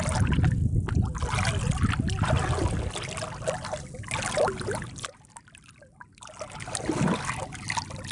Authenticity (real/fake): real